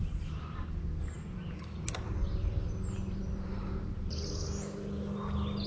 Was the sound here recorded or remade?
recorded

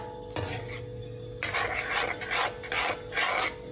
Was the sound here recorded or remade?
recorded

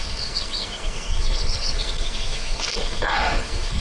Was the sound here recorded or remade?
remade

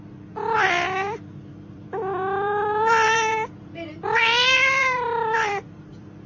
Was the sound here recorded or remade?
remade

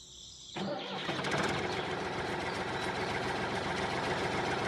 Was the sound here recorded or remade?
remade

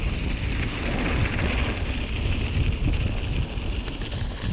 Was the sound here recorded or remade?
recorded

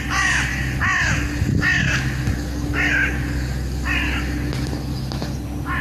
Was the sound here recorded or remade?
recorded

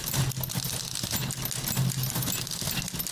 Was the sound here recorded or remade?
recorded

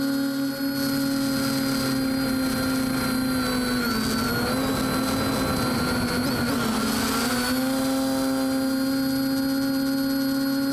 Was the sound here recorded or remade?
recorded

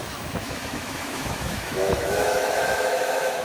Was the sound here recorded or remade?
remade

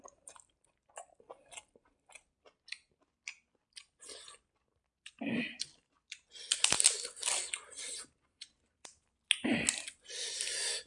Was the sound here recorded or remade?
recorded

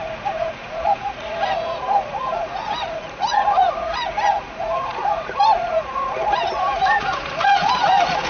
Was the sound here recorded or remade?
remade